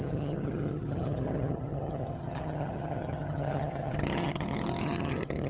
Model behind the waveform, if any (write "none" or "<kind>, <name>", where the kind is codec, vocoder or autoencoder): vocoder, HiFi-GAN